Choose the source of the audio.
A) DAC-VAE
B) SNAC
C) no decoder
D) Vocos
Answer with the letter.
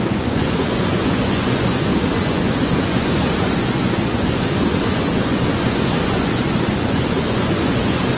D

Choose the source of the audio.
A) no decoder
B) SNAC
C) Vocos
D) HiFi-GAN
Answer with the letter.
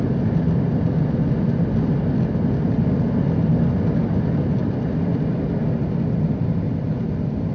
A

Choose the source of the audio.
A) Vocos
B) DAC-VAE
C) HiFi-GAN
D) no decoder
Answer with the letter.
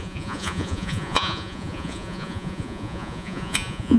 A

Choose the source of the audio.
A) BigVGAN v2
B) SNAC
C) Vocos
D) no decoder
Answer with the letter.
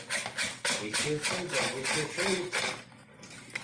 D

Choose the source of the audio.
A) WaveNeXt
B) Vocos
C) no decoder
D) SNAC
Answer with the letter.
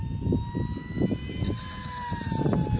C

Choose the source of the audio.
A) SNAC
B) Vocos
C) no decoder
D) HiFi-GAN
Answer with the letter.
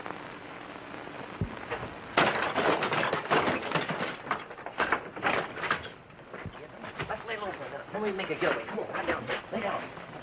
C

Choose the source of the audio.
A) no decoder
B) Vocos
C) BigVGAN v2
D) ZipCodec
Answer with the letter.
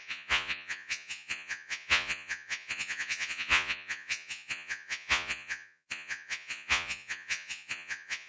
B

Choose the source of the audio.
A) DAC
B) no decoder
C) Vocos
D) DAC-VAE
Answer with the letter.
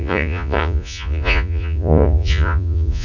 C